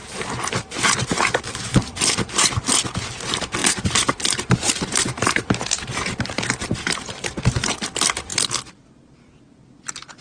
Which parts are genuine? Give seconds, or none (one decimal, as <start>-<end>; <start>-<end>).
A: 2.0-3.6; 7.4-10.2